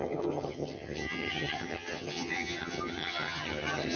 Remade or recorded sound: remade